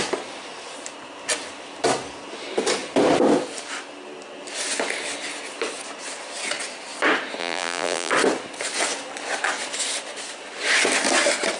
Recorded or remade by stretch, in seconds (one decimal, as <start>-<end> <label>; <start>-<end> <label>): 0.0-7.4 recorded; 7.4-8.1 remade; 8.1-11.6 recorded